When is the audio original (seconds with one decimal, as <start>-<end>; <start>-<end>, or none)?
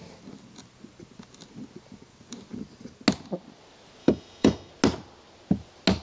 0.0-4.0; 4.7-6.0